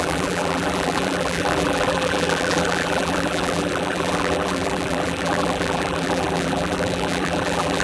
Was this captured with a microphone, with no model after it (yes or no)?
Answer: no